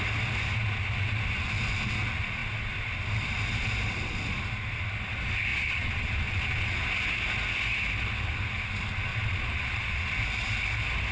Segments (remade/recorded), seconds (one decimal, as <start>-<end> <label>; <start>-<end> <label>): 0.0-5.5 recorded; 5.5-6.9 remade; 6.9-9.1 recorded; 9.1-10.1 remade; 10.1-11.1 recorded

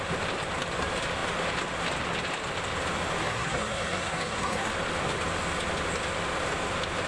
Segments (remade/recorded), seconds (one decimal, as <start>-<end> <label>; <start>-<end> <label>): 0.0-3.2 recorded; 3.2-4.7 remade; 4.7-7.1 recorded

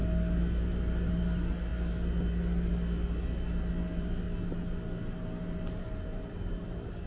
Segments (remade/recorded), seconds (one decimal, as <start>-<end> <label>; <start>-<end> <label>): 0.0-7.1 recorded